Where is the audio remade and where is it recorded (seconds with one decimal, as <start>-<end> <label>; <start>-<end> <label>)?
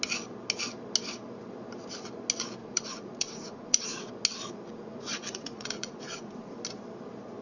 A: 0.0-2.6 recorded; 2.6-4.1 remade; 4.1-4.7 recorded; 4.7-6.5 remade; 6.5-7.4 recorded